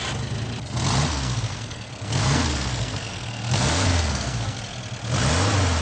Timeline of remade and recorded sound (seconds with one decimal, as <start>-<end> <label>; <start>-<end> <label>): 0.0-1.1 recorded; 1.1-4.6 remade; 4.6-5.8 recorded